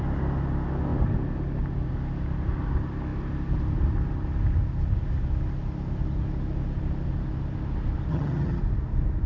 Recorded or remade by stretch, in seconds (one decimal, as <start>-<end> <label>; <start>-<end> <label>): 0.0-8.1 recorded; 8.1-8.6 remade; 8.6-9.3 recorded